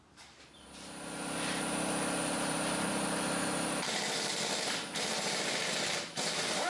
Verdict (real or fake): fake